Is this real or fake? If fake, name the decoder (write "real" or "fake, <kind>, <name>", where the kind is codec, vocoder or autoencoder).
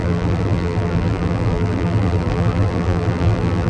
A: fake, vocoder, BigVGAN v2